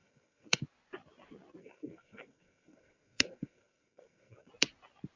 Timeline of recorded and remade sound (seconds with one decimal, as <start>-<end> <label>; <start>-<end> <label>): 0.0-0.6 remade; 0.6-1.6 recorded; 1.6-4.5 remade; 4.5-5.2 recorded